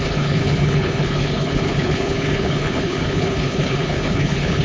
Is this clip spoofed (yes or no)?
yes